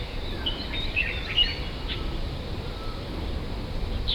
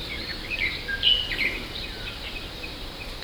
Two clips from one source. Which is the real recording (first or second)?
second